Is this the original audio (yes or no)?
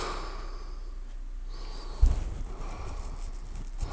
yes